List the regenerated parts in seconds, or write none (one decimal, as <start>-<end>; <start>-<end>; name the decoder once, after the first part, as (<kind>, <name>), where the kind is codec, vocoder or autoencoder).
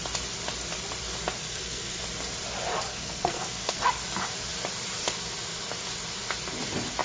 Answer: 1.4-2.0 (codec, SNAC); 2.9-3.8